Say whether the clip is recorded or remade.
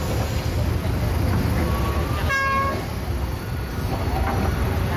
recorded